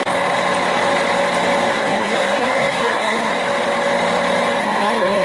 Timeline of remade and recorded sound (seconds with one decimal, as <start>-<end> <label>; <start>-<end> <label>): 0.0-1.7 recorded; 1.7-3.3 remade; 3.3-4.6 recorded; 4.6-5.2 remade